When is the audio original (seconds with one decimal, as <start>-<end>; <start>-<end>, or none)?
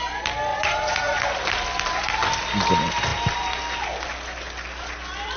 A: 0.0-0.5; 1.2-5.4